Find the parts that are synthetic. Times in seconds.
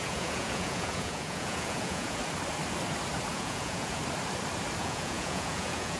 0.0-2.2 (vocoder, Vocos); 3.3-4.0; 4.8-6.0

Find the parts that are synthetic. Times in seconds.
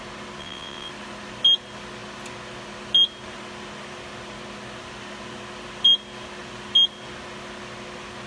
0.4-0.9 (vocoder, WaveNeXt)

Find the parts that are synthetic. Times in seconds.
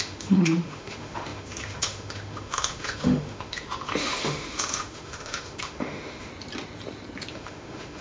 0.0-6.3 (autoencoder, DAC-VAE); 7.3-8.0